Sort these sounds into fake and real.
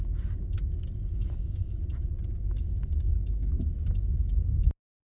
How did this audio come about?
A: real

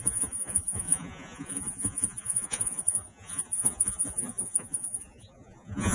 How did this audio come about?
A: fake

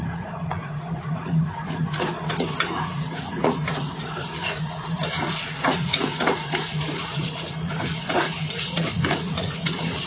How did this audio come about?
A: fake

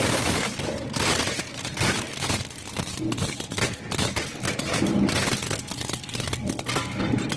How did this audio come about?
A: real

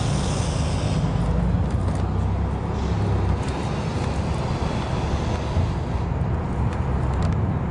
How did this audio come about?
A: real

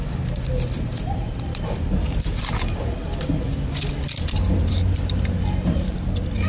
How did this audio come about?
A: real